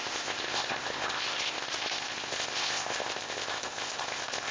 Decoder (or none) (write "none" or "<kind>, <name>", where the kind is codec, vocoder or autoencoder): codec, ZipCodec